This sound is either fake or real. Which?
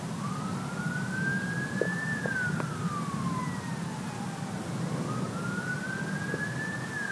real